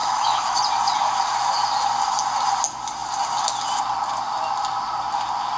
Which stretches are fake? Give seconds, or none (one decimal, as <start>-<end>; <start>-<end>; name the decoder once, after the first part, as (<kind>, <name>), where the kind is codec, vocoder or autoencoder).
0.0-0.6 (autoencoder, DAC-VAE)